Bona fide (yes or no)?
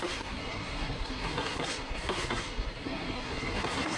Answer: no